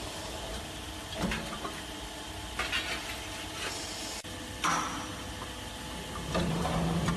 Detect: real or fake real